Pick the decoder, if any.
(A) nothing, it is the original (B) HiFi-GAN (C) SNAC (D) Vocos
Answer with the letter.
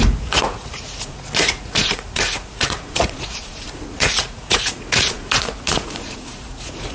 D